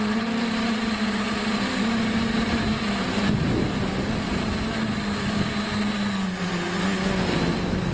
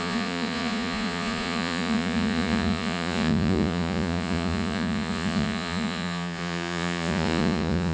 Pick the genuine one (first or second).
first